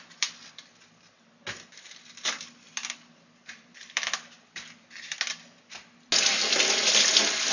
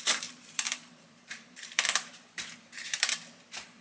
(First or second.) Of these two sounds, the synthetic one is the second